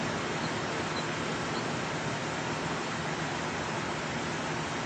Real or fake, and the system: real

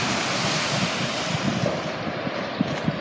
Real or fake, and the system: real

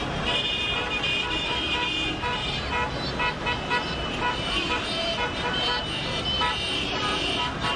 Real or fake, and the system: fake, vocoder, BigVGAN v2